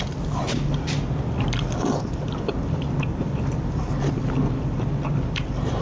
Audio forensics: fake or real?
real